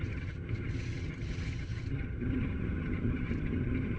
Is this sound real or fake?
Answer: fake